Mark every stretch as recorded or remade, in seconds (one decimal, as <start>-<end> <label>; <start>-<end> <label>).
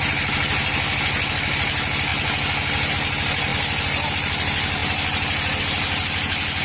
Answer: 0.0-6.6 recorded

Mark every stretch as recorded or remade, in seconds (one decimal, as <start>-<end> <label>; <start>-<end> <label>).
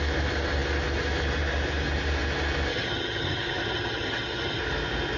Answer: 0.0-2.7 recorded; 2.7-4.6 remade; 4.6-5.2 recorded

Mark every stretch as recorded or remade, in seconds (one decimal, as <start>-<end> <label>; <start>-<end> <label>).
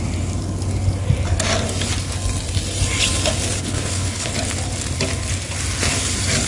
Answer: 0.0-3.6 recorded; 3.6-4.3 remade; 4.3-6.5 recorded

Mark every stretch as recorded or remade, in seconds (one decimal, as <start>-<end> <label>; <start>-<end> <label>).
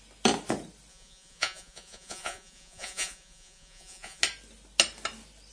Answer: 0.0-0.9 recorded; 0.9-4.2 remade; 4.2-5.5 recorded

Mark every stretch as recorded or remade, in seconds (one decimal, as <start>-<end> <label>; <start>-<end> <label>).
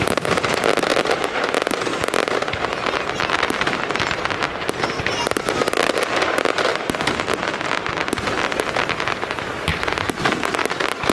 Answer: 0.0-11.1 recorded